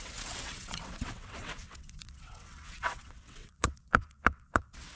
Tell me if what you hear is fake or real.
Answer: fake